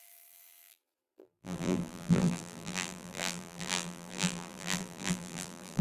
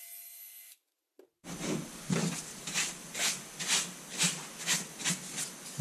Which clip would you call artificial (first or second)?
first